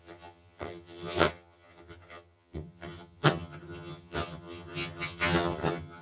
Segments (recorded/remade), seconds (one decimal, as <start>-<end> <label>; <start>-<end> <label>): 0.0-6.0 remade